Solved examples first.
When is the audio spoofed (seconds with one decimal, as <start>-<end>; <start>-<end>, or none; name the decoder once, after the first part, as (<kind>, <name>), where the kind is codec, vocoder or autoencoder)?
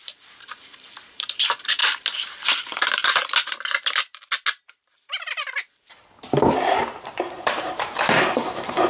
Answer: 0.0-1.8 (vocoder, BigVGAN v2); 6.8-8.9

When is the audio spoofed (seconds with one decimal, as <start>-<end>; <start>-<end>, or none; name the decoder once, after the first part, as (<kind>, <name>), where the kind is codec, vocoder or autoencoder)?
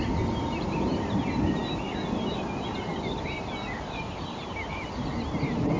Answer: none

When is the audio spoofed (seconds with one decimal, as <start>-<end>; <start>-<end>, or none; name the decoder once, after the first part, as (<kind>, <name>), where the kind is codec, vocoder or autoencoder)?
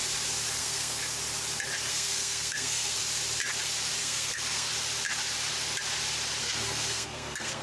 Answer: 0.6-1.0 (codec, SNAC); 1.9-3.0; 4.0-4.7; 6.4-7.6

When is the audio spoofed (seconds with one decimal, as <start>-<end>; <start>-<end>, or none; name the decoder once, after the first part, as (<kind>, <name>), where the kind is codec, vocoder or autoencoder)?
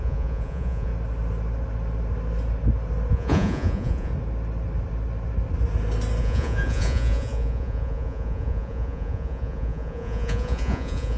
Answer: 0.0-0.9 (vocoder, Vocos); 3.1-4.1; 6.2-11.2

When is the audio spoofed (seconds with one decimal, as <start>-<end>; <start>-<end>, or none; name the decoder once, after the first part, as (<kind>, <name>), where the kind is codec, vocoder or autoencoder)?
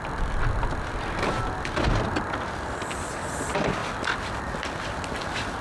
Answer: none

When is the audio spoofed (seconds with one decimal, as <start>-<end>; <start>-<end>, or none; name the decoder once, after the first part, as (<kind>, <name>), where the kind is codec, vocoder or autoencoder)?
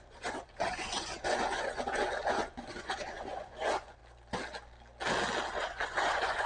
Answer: 0.0-4.0 (vocoder, Vocos); 5.5-6.5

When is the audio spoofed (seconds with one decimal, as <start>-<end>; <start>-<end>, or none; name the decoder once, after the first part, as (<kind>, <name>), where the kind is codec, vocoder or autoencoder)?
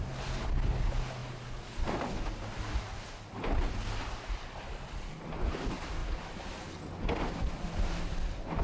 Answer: none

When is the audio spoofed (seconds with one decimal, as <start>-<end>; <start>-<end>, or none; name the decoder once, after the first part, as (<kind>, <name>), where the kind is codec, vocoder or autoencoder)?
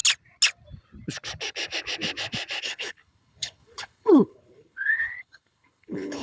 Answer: 2.6-6.2 (codec, HILCodec)